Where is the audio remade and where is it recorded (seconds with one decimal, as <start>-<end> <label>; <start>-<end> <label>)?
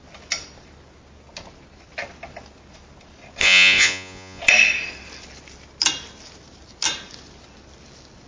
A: 0.0-3.4 recorded; 3.4-4.4 remade; 4.4-8.3 recorded